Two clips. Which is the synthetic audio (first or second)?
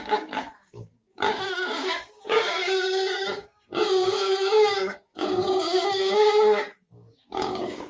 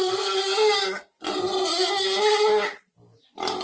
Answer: first